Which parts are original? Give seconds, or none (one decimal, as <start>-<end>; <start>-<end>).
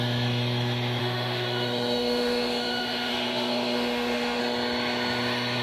0.0-1.0; 4.4-5.6